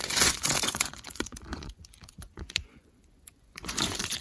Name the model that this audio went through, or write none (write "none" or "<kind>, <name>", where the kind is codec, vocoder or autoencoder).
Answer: vocoder, Vocos